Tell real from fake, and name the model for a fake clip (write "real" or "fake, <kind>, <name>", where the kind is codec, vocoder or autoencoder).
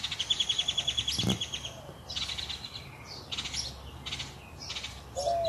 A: real